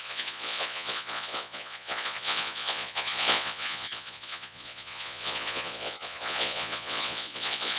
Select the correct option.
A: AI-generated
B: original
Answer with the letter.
A